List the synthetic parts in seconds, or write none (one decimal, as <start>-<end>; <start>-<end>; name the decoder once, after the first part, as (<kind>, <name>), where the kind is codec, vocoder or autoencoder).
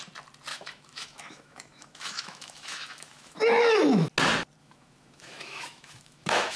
0.5-4.1 (autoencoder, DAC-VAE); 4.6-6.6